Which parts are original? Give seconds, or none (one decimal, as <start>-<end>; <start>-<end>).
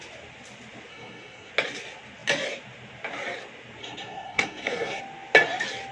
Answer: 0.0-0.9; 1.5-3.8; 5.0-5.9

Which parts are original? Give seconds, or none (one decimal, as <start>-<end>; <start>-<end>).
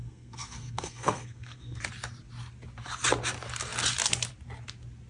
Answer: 1.8-5.1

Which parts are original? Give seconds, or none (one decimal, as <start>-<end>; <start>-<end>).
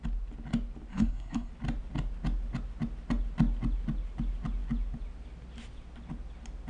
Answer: 0.0-0.9; 1.5-6.7